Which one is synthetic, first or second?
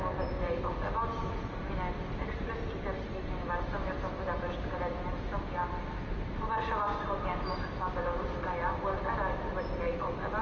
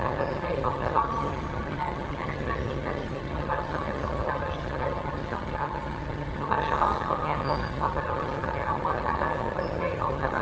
second